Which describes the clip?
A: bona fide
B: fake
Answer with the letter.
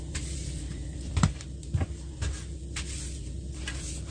A